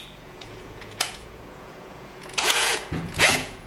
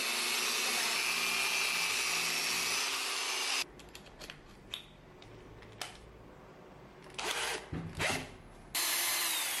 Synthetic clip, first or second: first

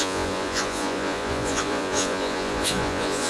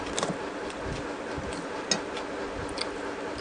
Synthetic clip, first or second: first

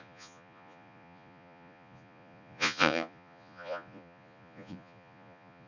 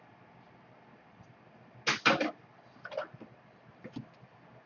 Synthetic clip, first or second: first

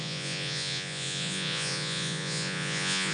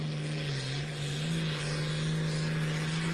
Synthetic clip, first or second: first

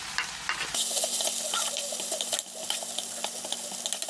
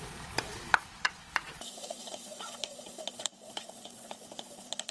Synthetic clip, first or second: second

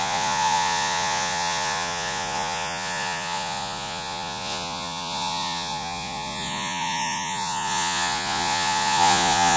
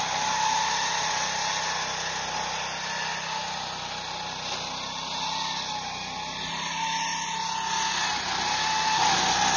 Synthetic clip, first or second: first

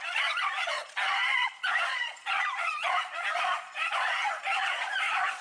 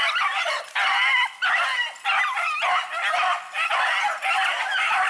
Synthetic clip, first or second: first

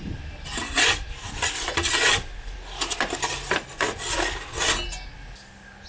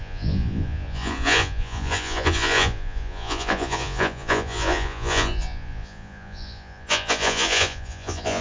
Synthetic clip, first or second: second